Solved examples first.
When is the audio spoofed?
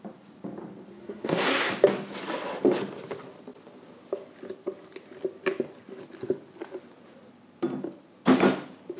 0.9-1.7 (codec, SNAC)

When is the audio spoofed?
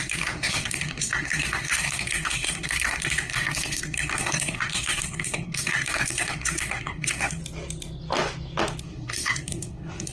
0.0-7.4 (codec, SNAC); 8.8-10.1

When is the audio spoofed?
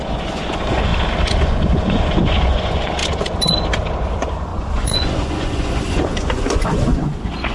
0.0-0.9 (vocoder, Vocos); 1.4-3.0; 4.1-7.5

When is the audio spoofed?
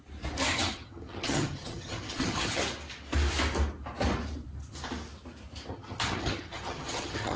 0.5-2.6 (vocoder, HiFi-GAN); 5.7-7.4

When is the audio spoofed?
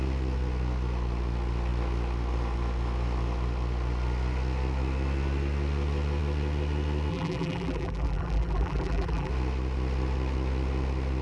7.1-9.3 (vocoder, BigVGAN v2)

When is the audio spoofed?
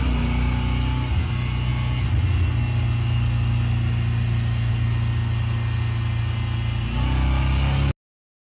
none